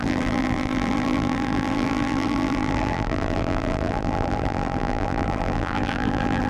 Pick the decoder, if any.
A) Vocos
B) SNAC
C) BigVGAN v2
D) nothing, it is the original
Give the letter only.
C